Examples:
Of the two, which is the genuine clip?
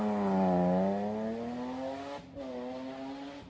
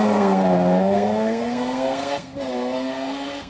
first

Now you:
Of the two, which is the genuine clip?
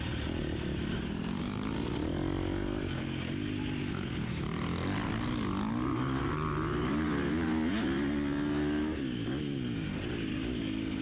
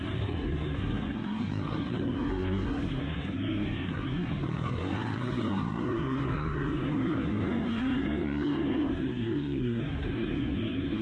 first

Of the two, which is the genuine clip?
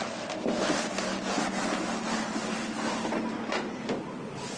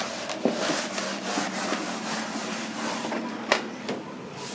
first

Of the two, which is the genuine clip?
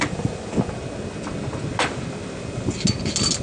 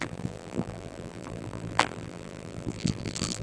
first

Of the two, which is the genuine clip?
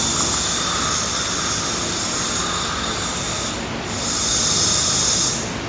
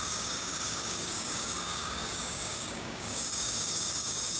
first